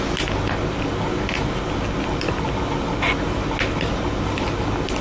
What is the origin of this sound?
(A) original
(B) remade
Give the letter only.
A